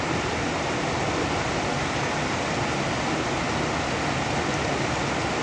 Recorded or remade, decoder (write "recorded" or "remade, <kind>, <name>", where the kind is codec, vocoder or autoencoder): recorded